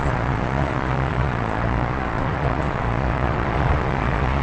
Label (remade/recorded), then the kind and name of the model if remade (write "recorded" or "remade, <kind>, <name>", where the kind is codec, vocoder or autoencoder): remade, vocoder, Vocos